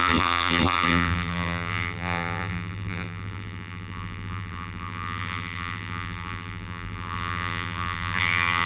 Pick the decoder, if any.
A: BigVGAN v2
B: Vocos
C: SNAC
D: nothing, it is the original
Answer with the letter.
A